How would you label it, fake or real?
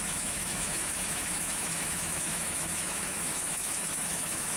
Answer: fake